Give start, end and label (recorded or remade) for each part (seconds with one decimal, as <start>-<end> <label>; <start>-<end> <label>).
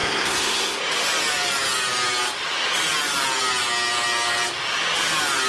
0.0-0.8 remade; 0.8-5.5 recorded